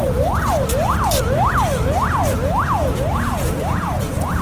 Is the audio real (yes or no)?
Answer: yes